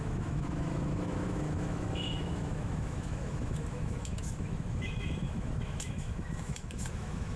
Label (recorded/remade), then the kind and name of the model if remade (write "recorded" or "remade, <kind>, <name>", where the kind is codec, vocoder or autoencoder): remade, autoencoder, DAC-VAE